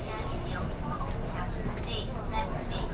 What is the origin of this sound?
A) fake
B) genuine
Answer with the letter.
B